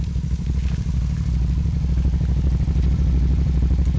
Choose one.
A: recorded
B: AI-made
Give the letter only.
A